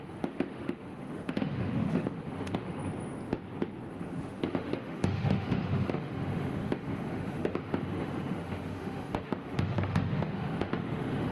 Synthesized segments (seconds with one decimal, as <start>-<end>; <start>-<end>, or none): 0.0-2.8; 4.0-11.3